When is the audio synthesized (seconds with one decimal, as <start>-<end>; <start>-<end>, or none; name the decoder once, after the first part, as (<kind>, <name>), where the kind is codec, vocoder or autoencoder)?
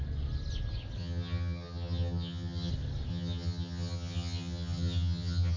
1.0-2.7 (vocoder, HiFi-GAN); 3.1-5.6